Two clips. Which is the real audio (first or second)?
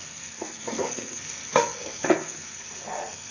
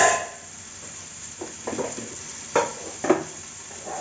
second